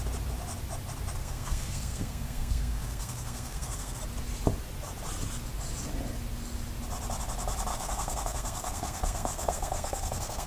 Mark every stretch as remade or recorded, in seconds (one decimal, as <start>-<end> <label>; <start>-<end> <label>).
0.0-1.2 recorded; 1.2-4.0 remade; 4.0-7.7 recorded; 7.7-10.5 remade